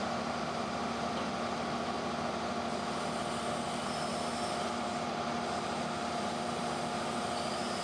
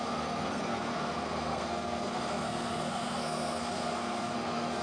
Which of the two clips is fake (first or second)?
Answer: second